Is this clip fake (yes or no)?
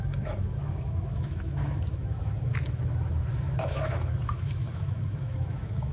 yes